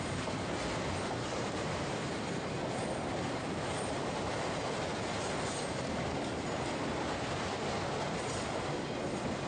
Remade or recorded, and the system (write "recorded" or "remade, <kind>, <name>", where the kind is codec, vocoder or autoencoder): recorded